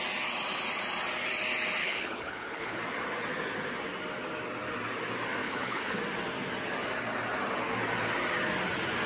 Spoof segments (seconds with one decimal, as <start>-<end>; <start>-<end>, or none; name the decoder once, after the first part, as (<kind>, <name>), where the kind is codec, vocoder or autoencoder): 1.8-2.8 (codec, HILCodec); 5.4-6.0